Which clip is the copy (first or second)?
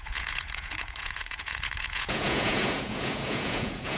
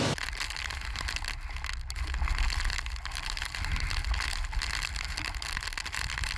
first